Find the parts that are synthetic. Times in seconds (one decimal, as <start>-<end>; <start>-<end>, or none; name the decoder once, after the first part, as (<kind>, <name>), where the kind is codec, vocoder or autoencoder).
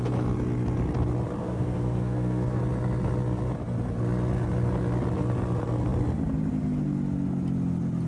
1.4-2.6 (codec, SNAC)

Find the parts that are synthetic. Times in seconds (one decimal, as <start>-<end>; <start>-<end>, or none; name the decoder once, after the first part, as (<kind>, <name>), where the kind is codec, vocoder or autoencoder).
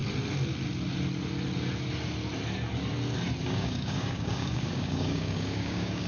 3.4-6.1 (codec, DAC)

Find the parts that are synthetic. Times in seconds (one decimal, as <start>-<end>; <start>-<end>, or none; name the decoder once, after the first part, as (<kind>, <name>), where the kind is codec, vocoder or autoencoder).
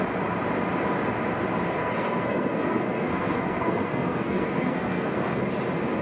1.8-5.4 (codec, SNAC)